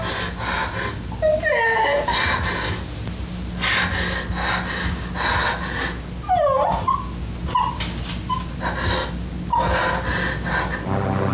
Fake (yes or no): no